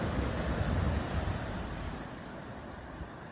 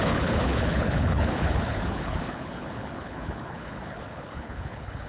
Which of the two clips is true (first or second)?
first